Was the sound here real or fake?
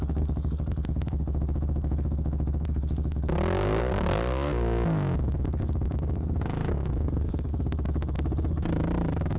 fake